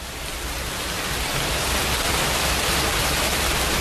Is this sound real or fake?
real